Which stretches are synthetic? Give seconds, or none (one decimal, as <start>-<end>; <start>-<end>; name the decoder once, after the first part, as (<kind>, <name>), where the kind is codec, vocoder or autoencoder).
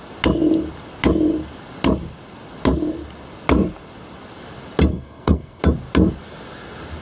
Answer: 4.9-5.6 (codec, SNAC)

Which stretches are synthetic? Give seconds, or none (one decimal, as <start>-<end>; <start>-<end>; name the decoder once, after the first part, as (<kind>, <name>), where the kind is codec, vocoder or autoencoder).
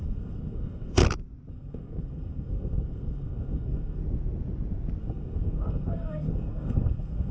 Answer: 0.0-1.0 (codec, SNAC); 1.5-4.0; 5.0-7.3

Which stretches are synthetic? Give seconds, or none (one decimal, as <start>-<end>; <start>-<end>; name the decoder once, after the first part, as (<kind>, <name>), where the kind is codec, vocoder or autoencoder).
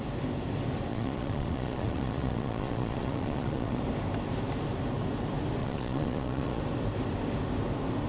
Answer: 0.9-3.8 (vocoder, Vocos); 5.6-6.6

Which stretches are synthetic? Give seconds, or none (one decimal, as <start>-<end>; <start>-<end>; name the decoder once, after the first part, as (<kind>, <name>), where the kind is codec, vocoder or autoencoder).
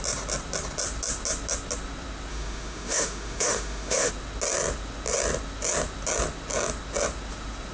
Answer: 2.3-4.1 (autoencoder, DAC-VAE)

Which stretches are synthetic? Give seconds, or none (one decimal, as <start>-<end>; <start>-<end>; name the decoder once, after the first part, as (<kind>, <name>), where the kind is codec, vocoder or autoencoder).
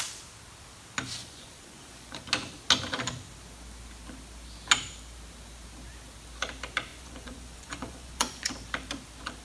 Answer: 1.2-2.2 (vocoder, Vocos); 6.9-8.5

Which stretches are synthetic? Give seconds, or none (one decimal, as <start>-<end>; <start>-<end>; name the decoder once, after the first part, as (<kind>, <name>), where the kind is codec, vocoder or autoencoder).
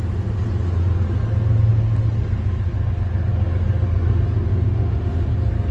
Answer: 4.5-5.3 (autoencoder, DAC-VAE)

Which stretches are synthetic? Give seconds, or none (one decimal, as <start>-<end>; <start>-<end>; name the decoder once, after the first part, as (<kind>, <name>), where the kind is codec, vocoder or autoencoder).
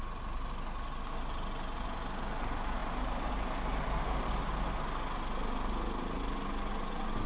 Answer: none